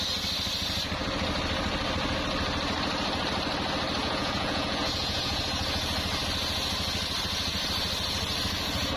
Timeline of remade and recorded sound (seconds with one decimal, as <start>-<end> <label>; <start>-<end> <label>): 0.0-4.0 recorded; 4.0-5.4 remade; 5.4-9.0 recorded